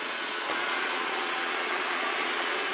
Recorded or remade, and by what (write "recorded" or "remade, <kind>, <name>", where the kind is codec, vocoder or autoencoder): remade, vocoder, Vocos